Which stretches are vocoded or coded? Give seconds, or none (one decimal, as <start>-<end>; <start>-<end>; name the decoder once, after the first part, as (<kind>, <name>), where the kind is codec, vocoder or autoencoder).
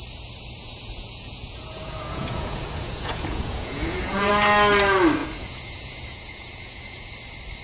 0.6-4.3 (vocoder, Vocos); 5.2-7.1